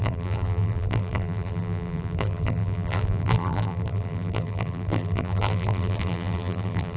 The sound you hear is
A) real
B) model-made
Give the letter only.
B